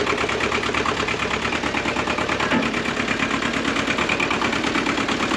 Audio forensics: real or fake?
real